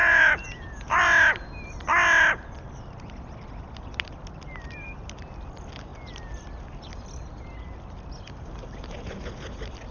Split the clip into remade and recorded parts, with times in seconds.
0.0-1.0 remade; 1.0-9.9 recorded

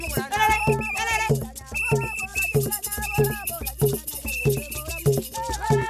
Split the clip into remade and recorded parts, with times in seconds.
0.0-5.9 recorded

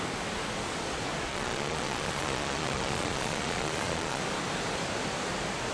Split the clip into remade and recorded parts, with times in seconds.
0.0-1.3 recorded; 1.3-4.2 remade; 4.2-5.7 recorded

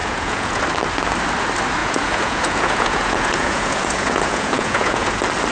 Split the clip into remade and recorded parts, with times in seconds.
0.0-0.6 remade; 0.6-1.8 recorded; 1.8-5.1 remade; 5.1-5.5 recorded

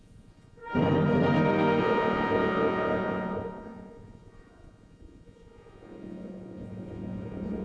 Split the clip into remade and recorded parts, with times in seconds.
0.0-0.6 remade; 0.6-1.8 recorded; 1.8-7.6 remade

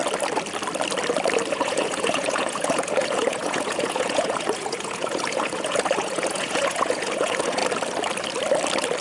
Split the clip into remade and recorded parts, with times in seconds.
0.0-1.5 recorded; 1.5-7.6 remade; 7.6-9.0 recorded